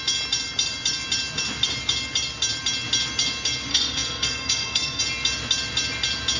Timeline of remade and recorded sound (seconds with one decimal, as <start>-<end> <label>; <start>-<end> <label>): 0.0-3.7 recorded; 3.7-5.0 remade; 5.0-6.4 recorded

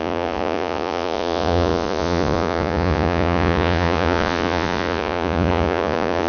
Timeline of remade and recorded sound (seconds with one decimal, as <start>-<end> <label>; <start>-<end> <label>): 0.0-6.3 remade